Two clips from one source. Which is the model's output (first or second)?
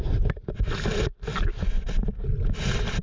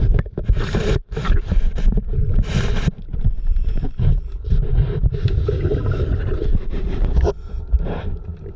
second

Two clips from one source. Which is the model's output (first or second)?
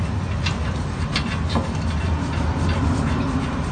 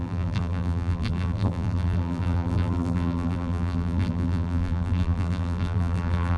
second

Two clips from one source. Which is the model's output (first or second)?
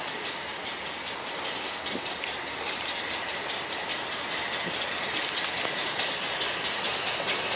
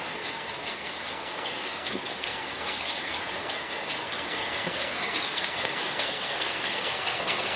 second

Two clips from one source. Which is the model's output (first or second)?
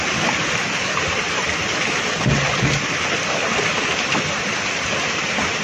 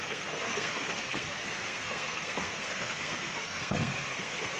second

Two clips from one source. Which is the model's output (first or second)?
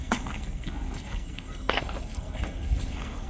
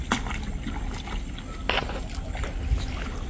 first